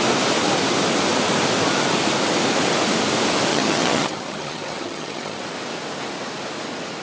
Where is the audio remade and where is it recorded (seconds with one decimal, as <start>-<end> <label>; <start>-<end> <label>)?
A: 0.0-3.5 recorded; 3.5-5.4 remade; 5.4-7.0 recorded